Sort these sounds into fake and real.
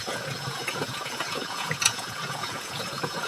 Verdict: fake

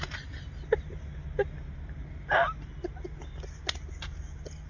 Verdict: real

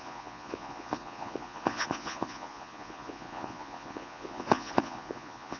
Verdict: fake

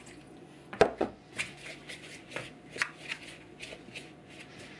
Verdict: fake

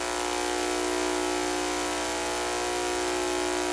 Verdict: real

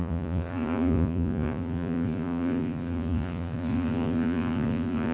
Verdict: fake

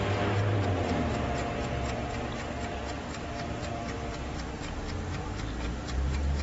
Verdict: real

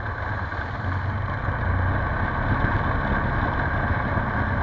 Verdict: real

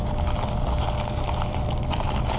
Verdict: real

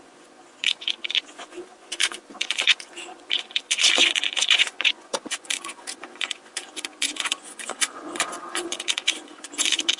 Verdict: fake